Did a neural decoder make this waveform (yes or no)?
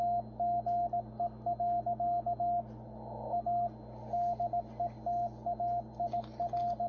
no